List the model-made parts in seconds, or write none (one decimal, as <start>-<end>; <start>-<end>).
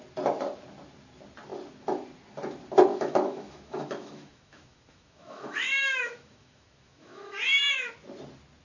2.9-7.9